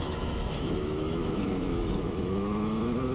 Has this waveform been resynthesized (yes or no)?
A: yes